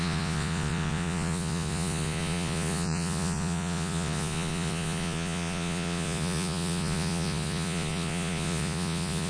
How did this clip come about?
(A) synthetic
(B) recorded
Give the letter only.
A